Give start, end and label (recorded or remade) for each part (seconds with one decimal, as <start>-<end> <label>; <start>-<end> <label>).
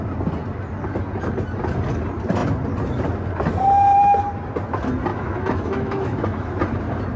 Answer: 0.0-5.1 recorded; 5.1-6.5 remade; 6.5-7.2 recorded